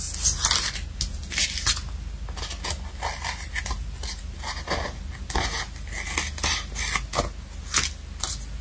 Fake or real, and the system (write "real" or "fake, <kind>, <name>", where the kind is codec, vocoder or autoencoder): real